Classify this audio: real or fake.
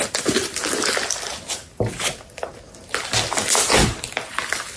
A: real